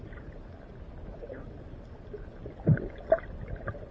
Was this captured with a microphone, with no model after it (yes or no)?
yes